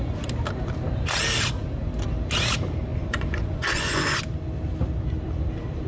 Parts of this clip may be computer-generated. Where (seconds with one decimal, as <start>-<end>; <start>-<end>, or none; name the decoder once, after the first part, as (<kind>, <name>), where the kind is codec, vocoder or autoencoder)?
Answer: 2.9-4.2 (vocoder, Vocos)